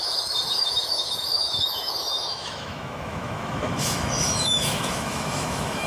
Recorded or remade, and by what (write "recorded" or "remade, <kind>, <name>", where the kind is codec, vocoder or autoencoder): remade, autoencoder, DAC-VAE